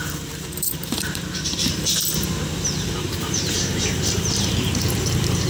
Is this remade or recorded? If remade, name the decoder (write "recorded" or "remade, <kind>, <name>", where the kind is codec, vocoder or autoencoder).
remade, vocoder, BigVGAN v2